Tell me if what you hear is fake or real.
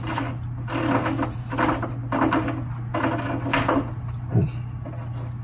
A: real